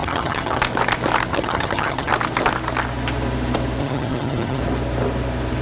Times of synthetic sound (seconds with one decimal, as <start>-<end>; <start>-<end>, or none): 0.0-0.6; 1.3-2.1; 3.8-4.6